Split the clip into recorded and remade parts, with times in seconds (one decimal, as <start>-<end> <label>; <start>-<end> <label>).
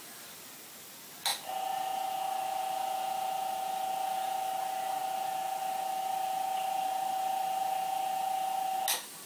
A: 0.0-9.3 recorded